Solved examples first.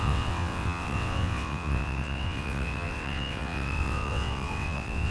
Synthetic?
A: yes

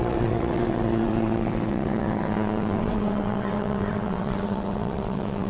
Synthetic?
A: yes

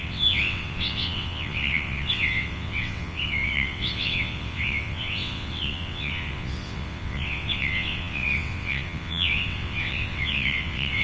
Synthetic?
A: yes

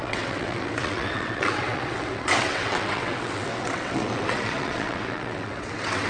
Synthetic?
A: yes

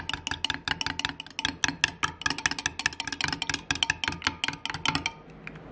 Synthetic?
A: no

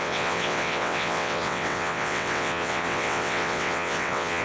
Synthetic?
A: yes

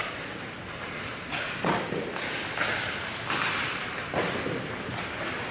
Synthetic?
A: no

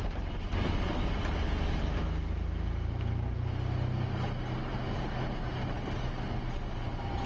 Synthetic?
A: no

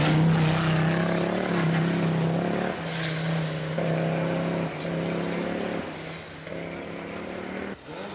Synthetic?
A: no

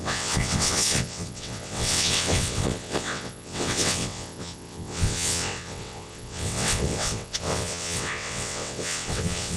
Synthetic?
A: yes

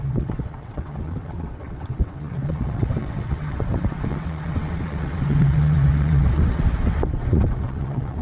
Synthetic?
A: yes